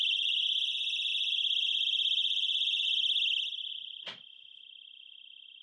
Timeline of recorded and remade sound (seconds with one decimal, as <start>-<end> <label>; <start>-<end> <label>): 0.0-5.6 recorded